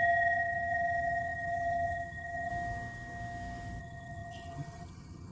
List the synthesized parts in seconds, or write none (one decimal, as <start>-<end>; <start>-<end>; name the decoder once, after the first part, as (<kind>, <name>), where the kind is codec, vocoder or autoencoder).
0.0-2.5 (vocoder, HiFi-GAN); 3.8-5.3